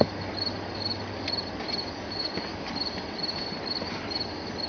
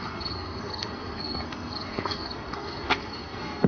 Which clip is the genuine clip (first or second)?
first